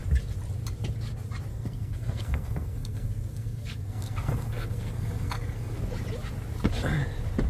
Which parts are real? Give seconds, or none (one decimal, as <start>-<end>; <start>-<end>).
0.0-1.5; 5.8-7.5